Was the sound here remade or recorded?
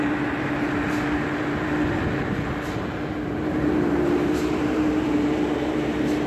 remade